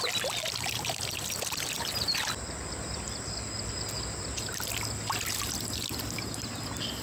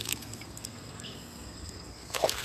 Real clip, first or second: first